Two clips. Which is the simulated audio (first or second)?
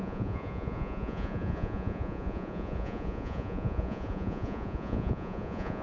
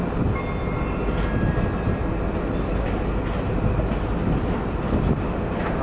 first